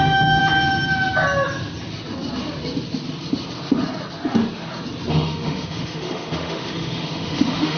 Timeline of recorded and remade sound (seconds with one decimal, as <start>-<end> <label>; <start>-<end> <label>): 0.0-0.4 remade; 0.4-5.1 recorded; 5.1-7.8 remade